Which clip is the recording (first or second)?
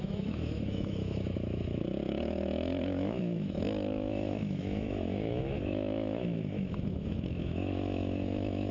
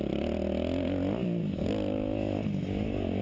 second